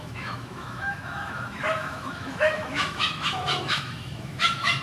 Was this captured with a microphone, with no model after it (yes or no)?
no